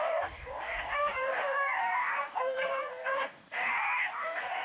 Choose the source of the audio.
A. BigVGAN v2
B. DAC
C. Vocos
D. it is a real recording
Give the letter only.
B